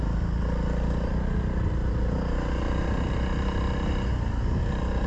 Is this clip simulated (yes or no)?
no